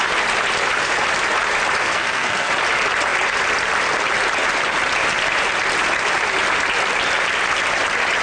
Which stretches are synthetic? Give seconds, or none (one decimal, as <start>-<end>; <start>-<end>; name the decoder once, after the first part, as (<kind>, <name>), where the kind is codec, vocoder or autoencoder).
1.8-2.5 (codec, SNAC)